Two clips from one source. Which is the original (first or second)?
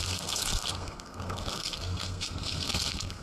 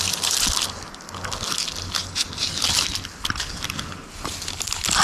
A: second